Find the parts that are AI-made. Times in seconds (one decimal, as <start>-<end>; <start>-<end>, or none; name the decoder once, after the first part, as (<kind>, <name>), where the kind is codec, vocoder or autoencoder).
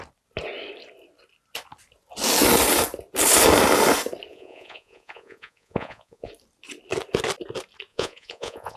4.3-6.3 (vocoder, Vocos); 7.9-8.8